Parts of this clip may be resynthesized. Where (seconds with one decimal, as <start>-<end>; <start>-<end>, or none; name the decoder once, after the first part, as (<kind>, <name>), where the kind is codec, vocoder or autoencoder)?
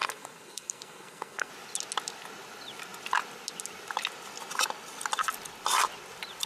0.0-1.5 (codec, SNAC)